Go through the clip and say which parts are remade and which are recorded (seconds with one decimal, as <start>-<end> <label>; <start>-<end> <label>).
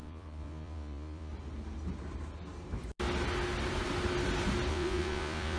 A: 0.0-1.3 remade; 1.3-4.7 recorded; 4.7-5.6 remade